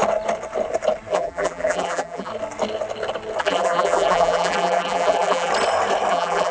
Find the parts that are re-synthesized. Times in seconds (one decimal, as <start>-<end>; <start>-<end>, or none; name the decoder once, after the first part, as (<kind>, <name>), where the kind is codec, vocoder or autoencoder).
1.1-2.3 (vocoder, BigVGAN v2); 3.4-5.5; 6.1-6.5